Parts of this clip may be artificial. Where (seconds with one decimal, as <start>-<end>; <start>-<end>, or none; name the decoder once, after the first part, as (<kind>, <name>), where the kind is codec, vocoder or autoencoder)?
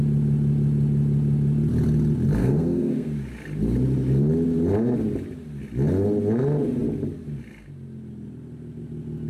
2.4-3.1 (codec, SNAC)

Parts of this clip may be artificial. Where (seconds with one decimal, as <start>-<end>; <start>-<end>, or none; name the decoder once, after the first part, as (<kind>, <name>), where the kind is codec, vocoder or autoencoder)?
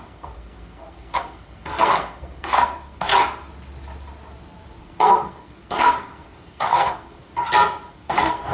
0.0-3.1 (codec, SNAC); 4.8-7.3; 7.9-8.5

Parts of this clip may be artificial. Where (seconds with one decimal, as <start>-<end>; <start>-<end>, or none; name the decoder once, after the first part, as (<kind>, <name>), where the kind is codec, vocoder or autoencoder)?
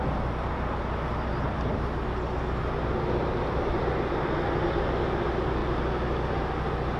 none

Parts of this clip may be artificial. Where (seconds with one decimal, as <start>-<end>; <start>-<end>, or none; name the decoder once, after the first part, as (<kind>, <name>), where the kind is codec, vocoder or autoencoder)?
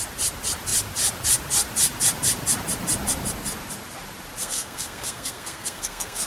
4.4-6.3 (codec, SNAC)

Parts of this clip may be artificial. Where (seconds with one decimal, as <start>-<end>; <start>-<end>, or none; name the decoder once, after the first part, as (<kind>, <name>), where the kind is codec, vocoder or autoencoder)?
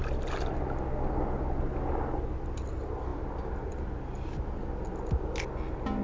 none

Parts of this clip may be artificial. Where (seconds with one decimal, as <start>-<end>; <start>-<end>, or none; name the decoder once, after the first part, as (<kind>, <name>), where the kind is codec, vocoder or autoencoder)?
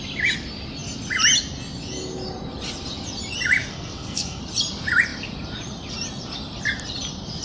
3.7-4.4 (codec, SNAC)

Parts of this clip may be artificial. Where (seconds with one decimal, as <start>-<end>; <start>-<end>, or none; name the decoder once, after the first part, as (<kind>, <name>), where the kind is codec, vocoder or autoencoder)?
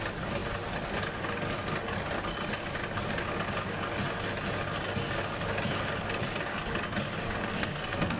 7.5-8.2 (codec, SNAC)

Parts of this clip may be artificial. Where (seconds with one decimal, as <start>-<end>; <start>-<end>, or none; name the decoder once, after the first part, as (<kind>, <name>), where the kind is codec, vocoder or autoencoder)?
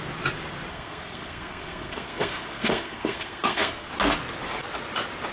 0.7-3.9 (codec, SNAC)